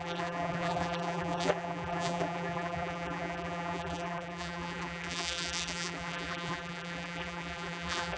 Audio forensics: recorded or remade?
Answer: remade